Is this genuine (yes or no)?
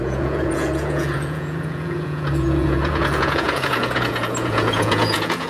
no